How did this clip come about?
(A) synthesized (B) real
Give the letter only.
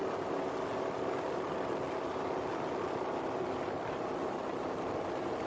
B